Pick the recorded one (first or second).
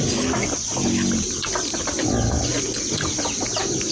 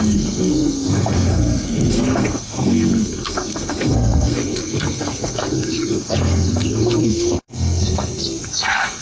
first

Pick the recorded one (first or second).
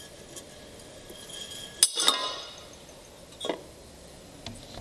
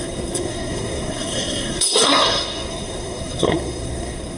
first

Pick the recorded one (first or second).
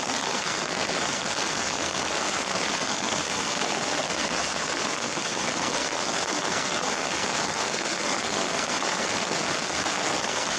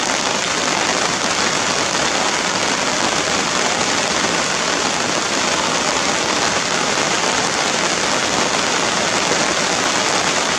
second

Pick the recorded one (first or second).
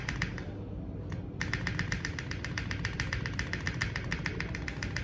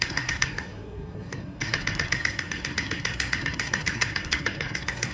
first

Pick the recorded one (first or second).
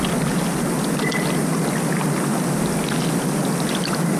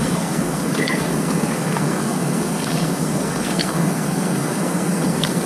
first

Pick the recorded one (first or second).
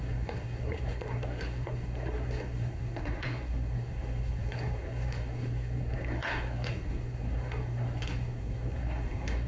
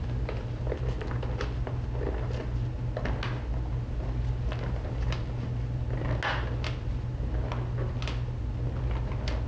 second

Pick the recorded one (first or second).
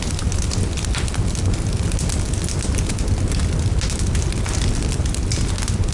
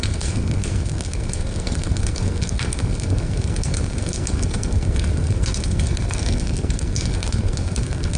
first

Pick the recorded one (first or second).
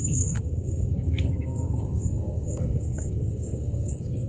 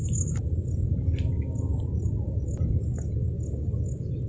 second